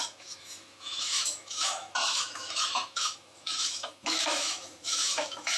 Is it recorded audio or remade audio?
remade